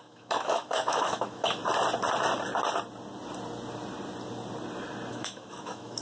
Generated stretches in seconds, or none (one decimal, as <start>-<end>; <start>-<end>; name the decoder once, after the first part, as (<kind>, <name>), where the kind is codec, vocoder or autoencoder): 0.0-1.6 (autoencoder, DAC-VAE); 5.1-6.0